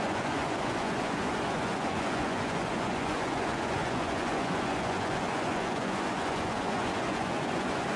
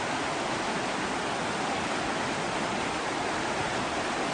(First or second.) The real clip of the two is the second